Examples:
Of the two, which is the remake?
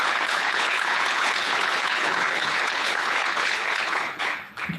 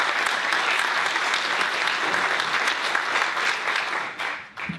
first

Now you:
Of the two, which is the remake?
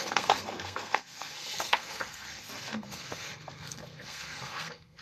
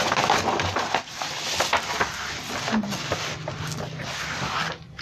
first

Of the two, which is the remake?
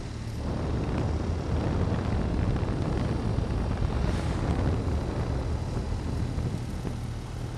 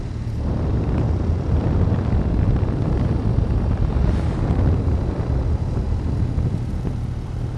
second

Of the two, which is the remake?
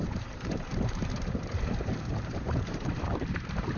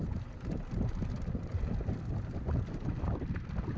first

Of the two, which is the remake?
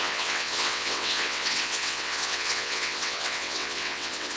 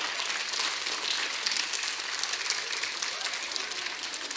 first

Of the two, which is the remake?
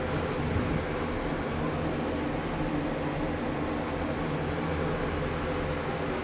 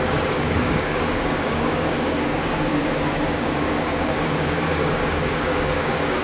second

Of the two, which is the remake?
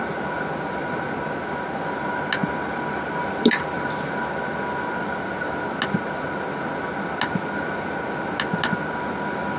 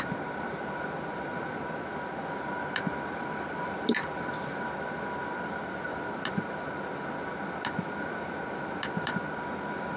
second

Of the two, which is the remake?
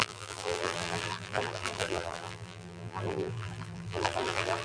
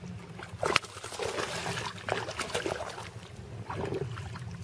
first